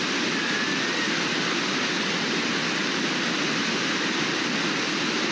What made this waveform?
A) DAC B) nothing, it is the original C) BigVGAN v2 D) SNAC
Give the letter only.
B